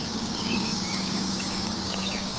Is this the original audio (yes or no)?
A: no